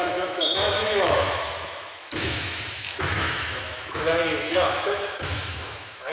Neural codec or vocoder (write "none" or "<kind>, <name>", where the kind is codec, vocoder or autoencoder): autoencoder, DAC-VAE